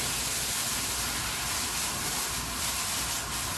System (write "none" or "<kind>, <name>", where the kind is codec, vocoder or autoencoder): none